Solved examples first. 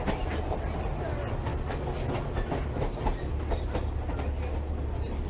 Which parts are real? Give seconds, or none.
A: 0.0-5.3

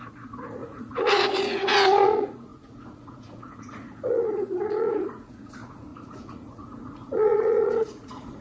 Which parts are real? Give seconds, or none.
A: none

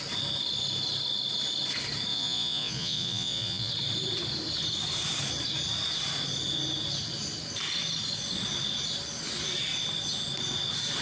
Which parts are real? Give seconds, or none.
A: 0.0-2.1; 3.7-11.0

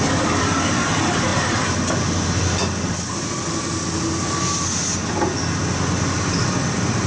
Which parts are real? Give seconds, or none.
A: 0.0-7.1

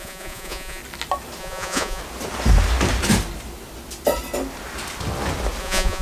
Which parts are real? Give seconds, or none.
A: 0.8-1.4; 2.0-5.6

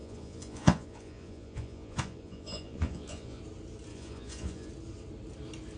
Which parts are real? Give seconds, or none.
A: 3.4-3.9; 4.7-5.8

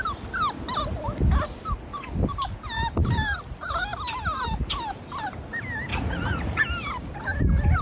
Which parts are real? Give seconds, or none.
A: 0.0-5.9; 6.6-7.8